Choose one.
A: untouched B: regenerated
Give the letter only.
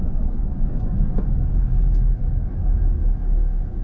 B